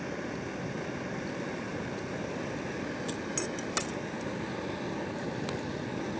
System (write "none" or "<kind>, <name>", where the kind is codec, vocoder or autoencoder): none